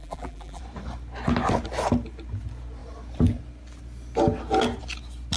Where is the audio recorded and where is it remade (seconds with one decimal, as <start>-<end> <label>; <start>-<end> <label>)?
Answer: 0.0-0.6 remade; 0.6-5.4 recorded